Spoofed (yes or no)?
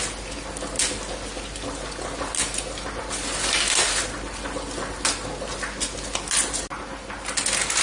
no